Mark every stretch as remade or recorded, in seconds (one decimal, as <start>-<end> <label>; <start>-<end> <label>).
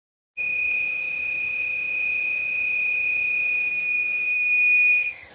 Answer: 0.0-3.7 recorded; 3.7-5.3 remade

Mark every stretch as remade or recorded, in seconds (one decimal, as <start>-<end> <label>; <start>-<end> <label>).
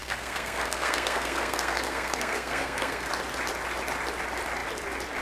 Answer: 0.0-3.1 remade; 3.1-5.2 recorded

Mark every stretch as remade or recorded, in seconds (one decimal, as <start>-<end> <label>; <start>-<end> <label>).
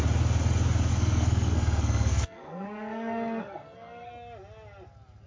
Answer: 0.0-0.9 recorded; 0.9-4.1 remade; 4.1-5.3 recorded